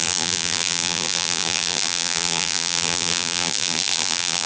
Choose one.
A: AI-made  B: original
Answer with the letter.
A